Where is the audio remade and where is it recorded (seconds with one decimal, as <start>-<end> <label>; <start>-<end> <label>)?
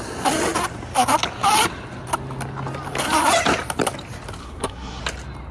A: 0.0-4.4 recorded; 4.4-5.0 remade; 5.0-5.5 recorded